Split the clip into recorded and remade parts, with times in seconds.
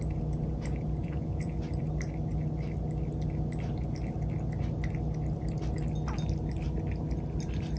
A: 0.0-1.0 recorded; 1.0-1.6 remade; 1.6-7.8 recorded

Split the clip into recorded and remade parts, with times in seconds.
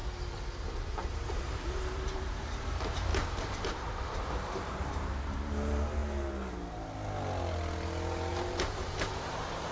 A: 0.0-1.3 recorded; 1.3-6.0 remade; 6.0-8.3 recorded; 8.3-9.7 remade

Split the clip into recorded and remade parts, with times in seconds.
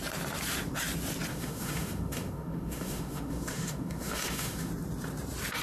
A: 0.0-1.3 recorded; 1.3-4.7 remade; 4.7-5.6 recorded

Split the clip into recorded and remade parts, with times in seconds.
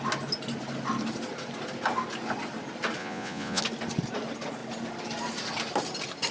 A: 0.0-3.0 recorded; 3.0-3.6 remade; 3.6-6.3 recorded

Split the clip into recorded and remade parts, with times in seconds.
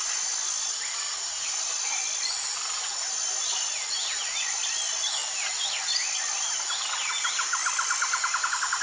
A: 0.0-8.8 recorded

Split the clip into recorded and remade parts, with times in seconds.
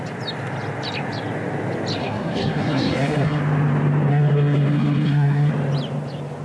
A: 0.0-2.0 recorded; 2.0-3.4 remade; 3.4-4.1 recorded; 4.1-5.5 remade; 5.5-6.4 recorded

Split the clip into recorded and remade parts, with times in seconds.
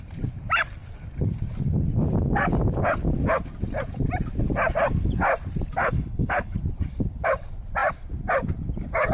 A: 0.0-5.8 recorded; 5.8-6.6 remade; 6.6-9.1 recorded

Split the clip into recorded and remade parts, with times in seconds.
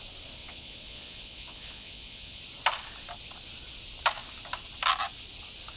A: 0.0-0.4 recorded; 0.4-2.4 remade; 2.4-5.8 recorded